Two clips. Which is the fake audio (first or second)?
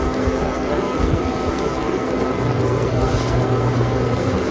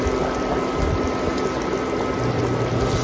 first